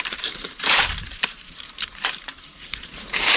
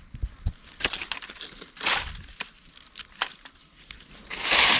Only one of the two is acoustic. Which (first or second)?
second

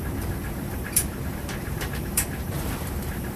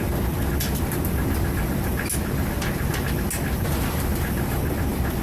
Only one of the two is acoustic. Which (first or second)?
second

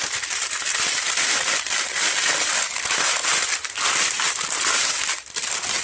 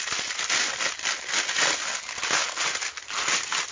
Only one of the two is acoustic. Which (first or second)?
second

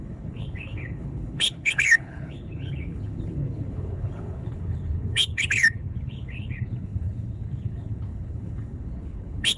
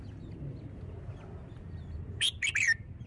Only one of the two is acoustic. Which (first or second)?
second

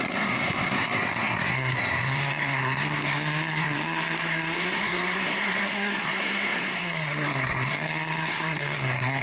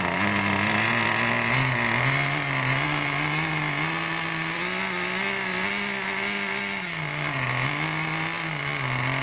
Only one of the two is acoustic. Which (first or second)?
second